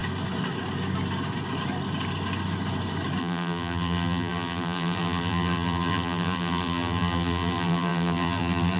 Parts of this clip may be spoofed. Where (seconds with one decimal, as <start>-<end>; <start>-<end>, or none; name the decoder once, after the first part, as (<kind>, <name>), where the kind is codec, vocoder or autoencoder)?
3.2-8.8 (vocoder, BigVGAN v2)